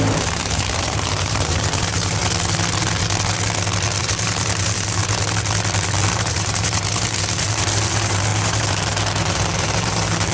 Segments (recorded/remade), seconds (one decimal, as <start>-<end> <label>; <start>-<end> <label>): 0.0-2.2 remade; 2.2-4.0 recorded; 4.0-5.0 remade; 5.0-6.1 recorded; 6.1-10.3 remade